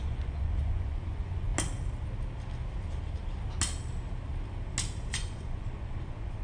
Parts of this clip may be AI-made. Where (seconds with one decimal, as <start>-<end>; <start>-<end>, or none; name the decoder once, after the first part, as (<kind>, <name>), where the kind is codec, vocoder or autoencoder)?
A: 0.0-1.5 (vocoder, Vocos); 5.1-6.4